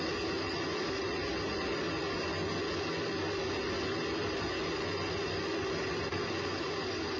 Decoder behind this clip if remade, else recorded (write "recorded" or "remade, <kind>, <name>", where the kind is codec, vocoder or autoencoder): recorded